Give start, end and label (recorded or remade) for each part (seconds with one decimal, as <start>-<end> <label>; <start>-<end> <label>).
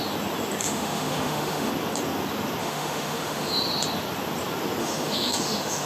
0.0-0.6 recorded; 0.6-1.7 remade; 1.7-2.6 recorded; 2.6-3.5 remade; 3.5-4.8 recorded; 4.8-5.9 remade